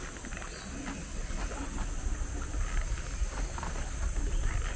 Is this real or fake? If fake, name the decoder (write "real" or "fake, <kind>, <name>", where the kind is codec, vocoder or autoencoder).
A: real